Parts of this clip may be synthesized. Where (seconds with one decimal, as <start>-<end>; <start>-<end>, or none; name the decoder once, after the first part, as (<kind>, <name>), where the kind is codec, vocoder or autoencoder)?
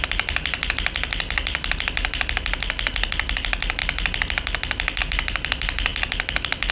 none